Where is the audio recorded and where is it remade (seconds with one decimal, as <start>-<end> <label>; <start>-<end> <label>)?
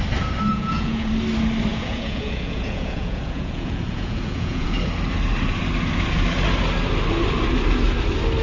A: 0.0-0.5 recorded; 0.5-1.1 remade; 1.1-1.7 recorded; 1.7-4.8 remade; 4.8-8.4 recorded